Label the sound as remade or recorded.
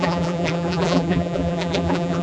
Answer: remade